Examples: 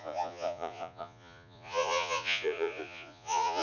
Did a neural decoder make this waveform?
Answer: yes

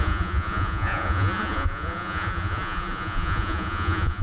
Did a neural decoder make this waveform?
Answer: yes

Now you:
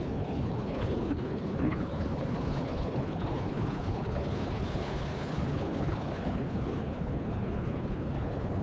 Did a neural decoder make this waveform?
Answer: yes